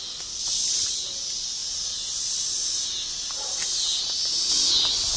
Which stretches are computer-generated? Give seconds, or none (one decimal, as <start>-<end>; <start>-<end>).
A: none